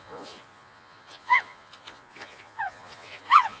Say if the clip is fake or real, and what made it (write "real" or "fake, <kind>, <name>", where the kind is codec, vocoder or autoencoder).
fake, vocoder, Vocos